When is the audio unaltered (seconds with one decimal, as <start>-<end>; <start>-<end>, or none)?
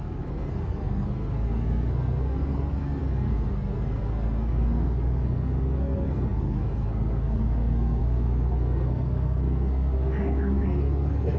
none